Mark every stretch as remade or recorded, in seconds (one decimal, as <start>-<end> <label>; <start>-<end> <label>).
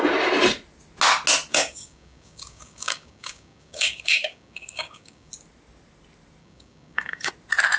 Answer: 0.0-1.5 recorded; 1.5-5.3 remade; 5.3-6.4 recorded; 6.4-7.3 remade; 7.3-7.8 recorded